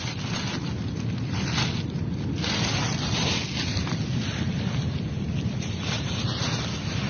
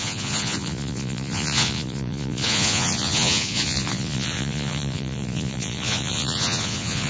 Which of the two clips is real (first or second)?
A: first